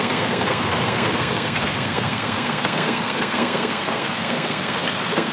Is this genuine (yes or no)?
no